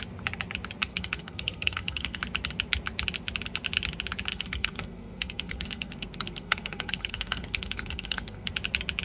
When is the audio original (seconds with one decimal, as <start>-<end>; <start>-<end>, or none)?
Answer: 0.0-0.9; 2.2-4.3; 8.5-9.0